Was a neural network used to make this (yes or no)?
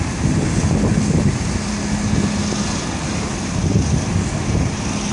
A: no